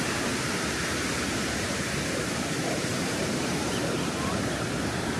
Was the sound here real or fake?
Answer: fake